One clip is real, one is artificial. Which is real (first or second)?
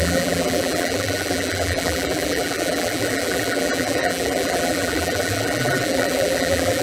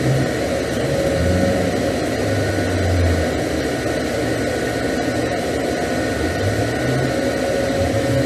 second